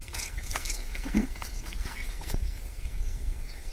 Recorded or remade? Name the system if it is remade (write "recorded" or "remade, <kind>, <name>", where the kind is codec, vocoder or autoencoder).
remade, codec, SNAC